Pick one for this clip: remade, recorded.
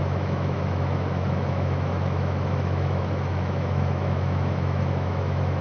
remade